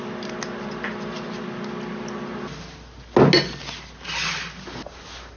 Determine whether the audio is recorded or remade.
recorded